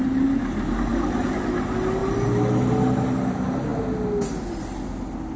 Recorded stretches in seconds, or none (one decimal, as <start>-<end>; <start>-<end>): 0.0-5.4